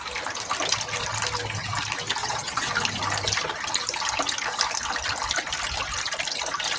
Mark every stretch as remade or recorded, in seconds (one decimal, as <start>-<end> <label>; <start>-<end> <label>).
0.0-2.2 recorded; 2.2-2.7 remade; 2.7-6.8 recorded